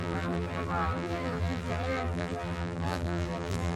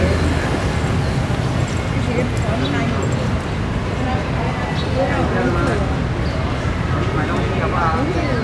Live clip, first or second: second